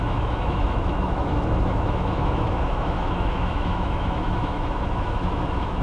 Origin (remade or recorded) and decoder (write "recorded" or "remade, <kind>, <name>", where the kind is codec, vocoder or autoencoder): remade, autoencoder, DAC-VAE